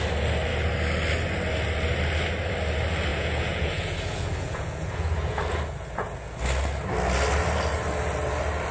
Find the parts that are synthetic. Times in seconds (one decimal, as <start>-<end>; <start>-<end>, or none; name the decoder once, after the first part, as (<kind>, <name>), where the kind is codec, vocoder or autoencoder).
3.1-6.4 (vocoder, Vocos)